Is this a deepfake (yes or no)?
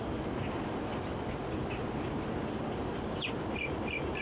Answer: no